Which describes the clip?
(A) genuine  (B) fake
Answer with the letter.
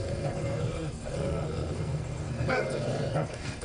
B